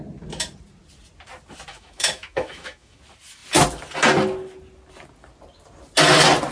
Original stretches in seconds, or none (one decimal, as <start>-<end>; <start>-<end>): 0.0-1.7; 3.0-6.5